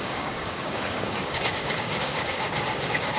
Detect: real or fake fake